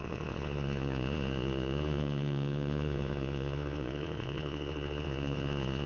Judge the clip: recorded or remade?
remade